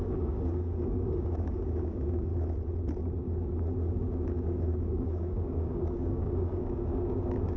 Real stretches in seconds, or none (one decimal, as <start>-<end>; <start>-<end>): 2.3-3.9